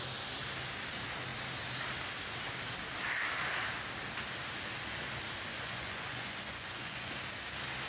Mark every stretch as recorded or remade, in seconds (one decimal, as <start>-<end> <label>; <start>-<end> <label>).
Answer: 0.0-5.5 recorded; 5.5-7.1 remade; 7.1-7.9 recorded